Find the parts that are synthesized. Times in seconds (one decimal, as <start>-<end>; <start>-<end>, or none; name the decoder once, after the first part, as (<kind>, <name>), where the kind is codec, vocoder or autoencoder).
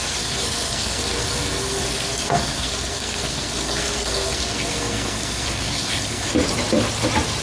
0.0-6.3 (codec, SNAC)